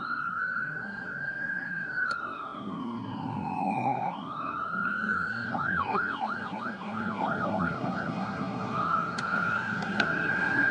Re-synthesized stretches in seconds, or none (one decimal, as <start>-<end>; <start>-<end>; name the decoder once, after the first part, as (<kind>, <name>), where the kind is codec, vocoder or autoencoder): 0.0-10.7 (codec, SNAC)